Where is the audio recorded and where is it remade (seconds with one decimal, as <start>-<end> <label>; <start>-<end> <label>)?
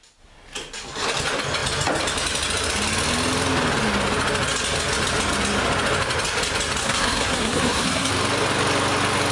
0.0-6.8 recorded; 6.8-8.1 remade; 8.1-9.3 recorded